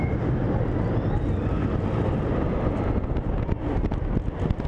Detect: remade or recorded recorded